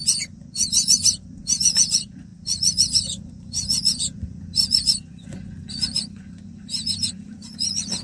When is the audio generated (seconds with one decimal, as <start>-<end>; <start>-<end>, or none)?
0.0-8.0